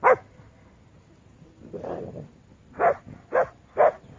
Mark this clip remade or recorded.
recorded